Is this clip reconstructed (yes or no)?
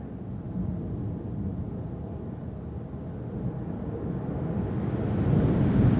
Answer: no